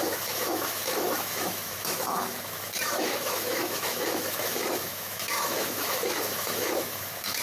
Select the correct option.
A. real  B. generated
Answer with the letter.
B